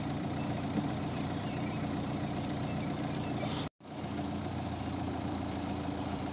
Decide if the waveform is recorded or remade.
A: remade